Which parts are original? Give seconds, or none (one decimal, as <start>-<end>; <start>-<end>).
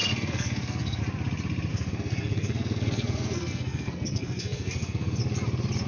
1.0-1.7; 5.2-5.9